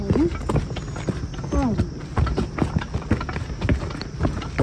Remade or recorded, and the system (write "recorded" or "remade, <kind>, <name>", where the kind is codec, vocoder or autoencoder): recorded